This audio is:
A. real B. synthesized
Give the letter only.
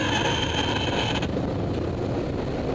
A